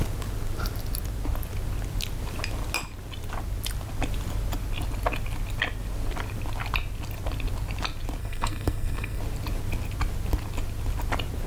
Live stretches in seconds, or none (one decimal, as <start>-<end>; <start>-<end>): 0.0-8.2; 9.2-11.5